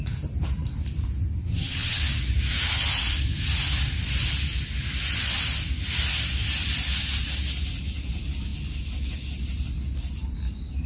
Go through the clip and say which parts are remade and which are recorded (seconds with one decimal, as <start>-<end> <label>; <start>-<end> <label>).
0.0-1.4 recorded; 1.4-2.0 remade; 2.0-10.9 recorded